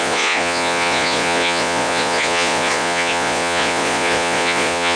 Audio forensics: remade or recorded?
remade